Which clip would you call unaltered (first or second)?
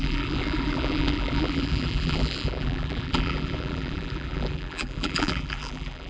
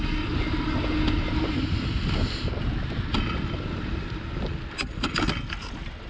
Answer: second